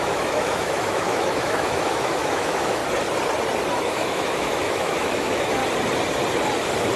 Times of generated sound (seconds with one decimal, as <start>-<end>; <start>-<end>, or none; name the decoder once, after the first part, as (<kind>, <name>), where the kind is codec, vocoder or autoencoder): 0.0-2.8 (autoencoder, DAC-VAE); 3.8-5.6